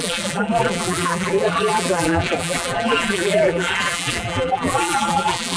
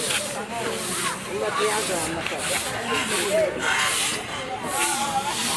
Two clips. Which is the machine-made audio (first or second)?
first